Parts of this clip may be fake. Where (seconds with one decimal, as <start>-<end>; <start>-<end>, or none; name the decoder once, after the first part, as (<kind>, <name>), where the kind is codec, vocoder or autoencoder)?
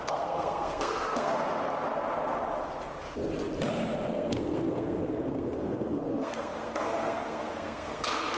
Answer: 0.0-1.3 (codec, SNAC); 4.1-8.4